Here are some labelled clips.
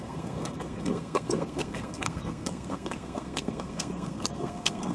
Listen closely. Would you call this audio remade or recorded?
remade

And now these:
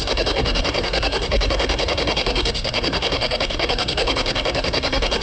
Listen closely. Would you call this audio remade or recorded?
remade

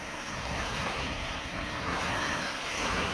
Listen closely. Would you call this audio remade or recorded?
remade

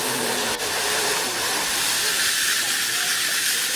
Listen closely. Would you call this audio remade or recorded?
recorded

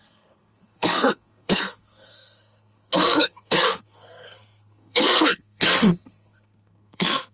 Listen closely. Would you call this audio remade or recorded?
remade